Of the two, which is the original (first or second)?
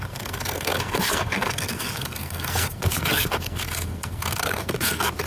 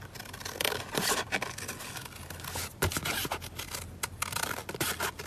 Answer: second